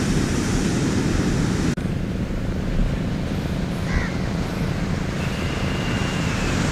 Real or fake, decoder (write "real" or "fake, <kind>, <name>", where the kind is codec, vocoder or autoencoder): real